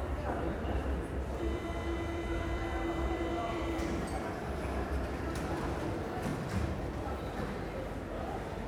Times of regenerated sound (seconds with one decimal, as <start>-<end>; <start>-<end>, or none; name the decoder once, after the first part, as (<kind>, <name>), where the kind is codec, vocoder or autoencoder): 0.8-5.8 (vocoder, BigVGAN v2); 6.3-7.2